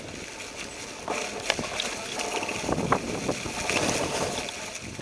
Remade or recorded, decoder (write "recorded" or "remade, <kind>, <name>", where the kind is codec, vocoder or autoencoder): recorded